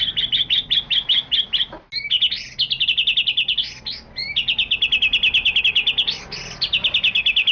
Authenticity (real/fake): real